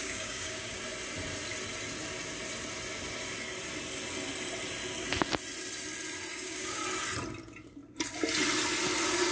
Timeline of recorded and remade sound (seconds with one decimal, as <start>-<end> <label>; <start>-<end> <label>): 0.0-0.8 remade; 0.8-6.3 recorded; 6.3-6.8 remade; 6.8-9.3 recorded